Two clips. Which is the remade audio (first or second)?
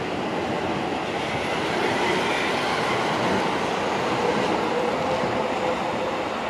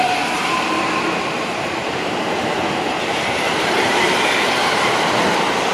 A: second